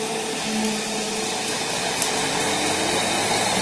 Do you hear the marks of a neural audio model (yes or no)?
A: no